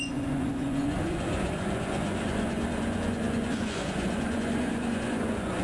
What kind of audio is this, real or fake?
fake